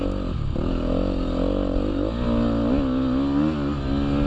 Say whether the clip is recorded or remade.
recorded